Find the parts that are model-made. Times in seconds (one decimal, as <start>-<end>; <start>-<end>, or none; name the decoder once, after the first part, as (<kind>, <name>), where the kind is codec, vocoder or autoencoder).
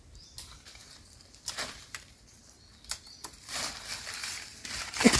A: 0.8-3.9 (vocoder, BigVGAN v2)